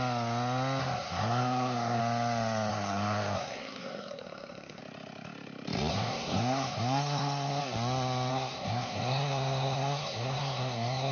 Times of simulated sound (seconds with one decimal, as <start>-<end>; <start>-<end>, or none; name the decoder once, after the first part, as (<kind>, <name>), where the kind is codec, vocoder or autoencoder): 0.8-2.0 (codec, SNAC); 2.7-4.8; 5.9-7.6; 8.3-11.1